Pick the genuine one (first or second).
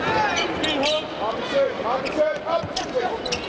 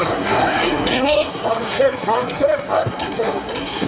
first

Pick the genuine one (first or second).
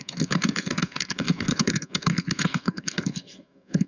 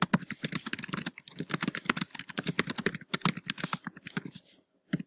second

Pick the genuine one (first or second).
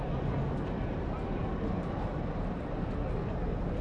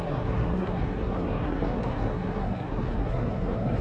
first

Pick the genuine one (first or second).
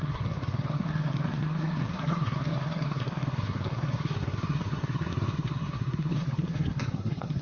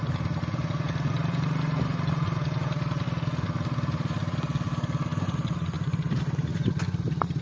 second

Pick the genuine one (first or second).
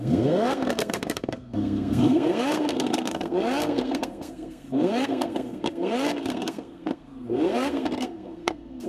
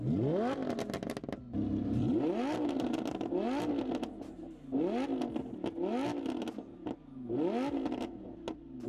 second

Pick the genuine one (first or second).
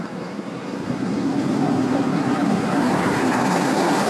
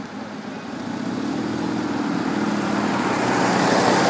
second